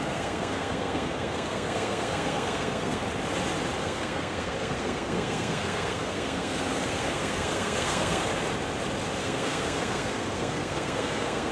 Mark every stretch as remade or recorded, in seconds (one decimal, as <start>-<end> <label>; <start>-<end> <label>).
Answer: 0.0-3.0 remade; 3.0-3.8 recorded; 3.8-8.3 remade; 8.3-9.2 recorded; 9.2-11.5 remade